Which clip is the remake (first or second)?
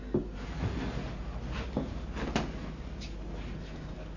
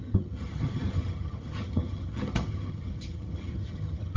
second